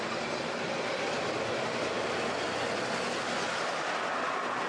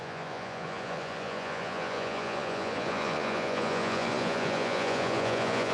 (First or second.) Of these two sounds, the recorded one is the first